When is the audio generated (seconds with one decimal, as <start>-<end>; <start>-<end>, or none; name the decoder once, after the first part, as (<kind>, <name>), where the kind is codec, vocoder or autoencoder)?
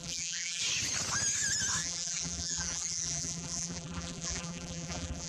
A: 0.0-0.6 (vocoder, BigVGAN v2); 1.8-5.3